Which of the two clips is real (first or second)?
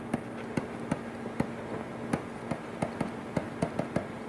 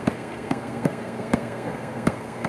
first